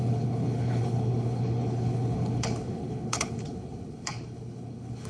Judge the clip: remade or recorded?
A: remade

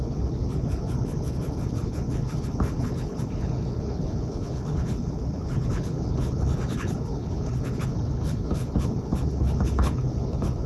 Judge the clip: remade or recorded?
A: remade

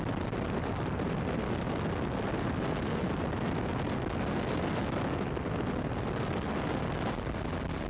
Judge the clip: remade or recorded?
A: recorded